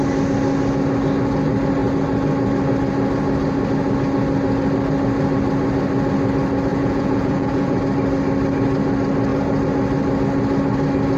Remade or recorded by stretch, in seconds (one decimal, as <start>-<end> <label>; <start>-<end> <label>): 0.0-6.7 recorded; 6.7-7.8 remade; 7.8-11.2 recorded